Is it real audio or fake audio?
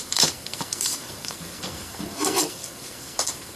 fake